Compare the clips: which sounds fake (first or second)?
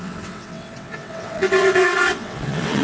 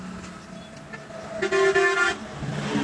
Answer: first